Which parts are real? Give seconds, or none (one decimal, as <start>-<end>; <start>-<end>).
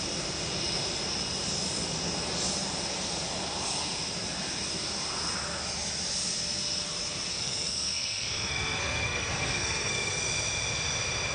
0.0-7.3; 10.2-11.3